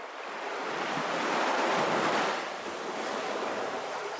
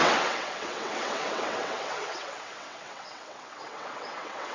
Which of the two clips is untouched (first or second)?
first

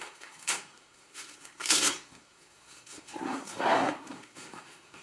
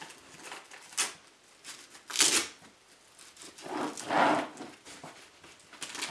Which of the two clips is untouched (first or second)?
second